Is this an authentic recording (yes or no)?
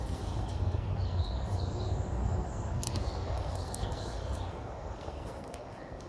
no